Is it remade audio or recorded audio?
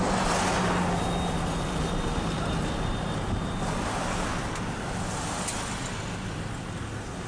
recorded